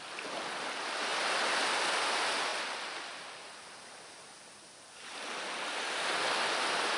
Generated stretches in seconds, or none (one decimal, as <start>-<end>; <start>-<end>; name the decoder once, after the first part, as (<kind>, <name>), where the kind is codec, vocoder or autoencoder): none